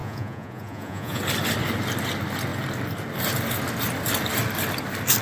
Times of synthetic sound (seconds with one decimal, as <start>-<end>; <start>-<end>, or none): 0.0-1.2